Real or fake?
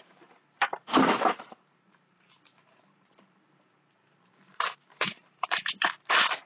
fake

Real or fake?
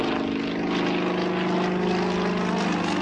real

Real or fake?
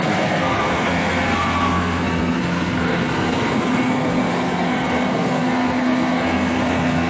fake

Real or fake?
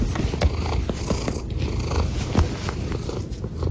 real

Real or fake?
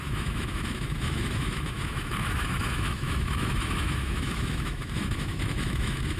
fake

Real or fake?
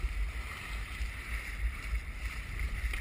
fake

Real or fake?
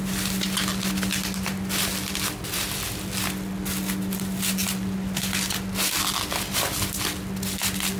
real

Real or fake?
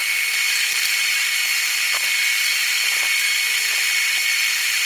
real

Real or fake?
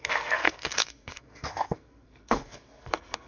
fake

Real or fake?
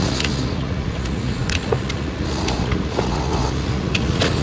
fake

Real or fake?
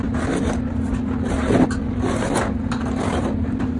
real